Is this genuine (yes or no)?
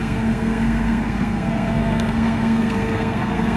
no